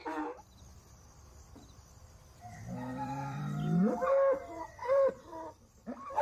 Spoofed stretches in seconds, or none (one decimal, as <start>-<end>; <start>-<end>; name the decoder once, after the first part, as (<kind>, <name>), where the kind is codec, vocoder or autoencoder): 2.9-3.4 (vocoder, BigVGAN v2); 4.8-6.2